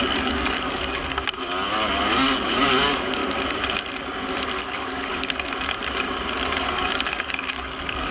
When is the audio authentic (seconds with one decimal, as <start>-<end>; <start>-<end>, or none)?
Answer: 1.0-2.1; 3.2-4.6; 5.1-6.5